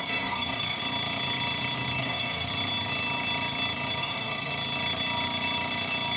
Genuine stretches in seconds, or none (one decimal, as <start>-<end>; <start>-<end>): 0.8-2.0; 2.5-4.0; 4.5-6.2